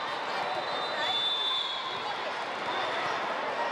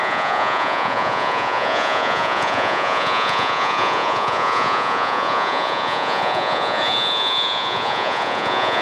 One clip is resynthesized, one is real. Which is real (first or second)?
first